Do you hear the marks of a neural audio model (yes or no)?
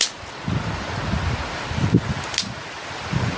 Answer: no